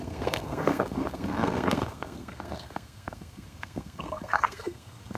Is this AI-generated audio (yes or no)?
yes